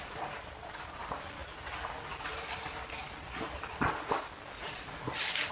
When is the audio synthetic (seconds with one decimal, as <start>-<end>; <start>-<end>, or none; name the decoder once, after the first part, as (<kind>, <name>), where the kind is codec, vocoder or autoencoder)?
none